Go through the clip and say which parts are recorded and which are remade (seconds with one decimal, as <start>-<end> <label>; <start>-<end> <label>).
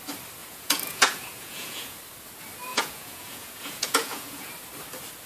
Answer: 0.0-0.4 recorded; 0.4-2.0 remade; 2.0-2.7 recorded; 2.7-4.5 remade; 4.5-5.3 recorded